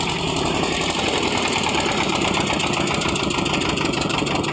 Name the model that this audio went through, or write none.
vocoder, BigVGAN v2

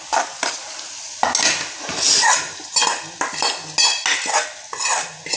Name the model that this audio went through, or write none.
none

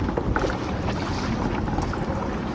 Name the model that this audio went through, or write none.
none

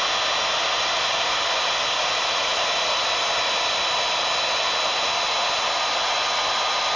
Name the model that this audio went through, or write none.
none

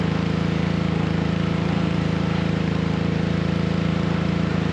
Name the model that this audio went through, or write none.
vocoder, BigVGAN v2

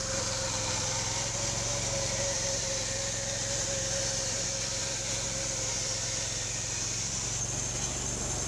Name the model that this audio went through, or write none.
vocoder, BigVGAN v2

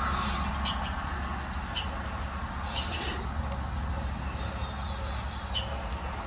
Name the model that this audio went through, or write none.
none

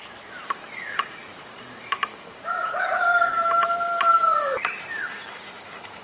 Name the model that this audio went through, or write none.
vocoder, BigVGAN v2